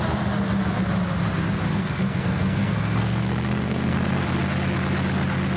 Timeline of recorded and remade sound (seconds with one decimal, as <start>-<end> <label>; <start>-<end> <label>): 0.0-1.7 recorded; 1.7-4.2 remade; 4.2-5.6 recorded